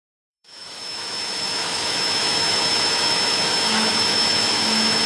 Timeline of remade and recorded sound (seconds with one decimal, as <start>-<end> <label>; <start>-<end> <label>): 0.0-5.1 remade